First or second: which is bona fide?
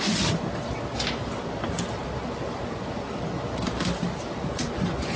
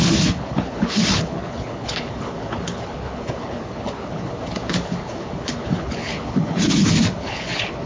first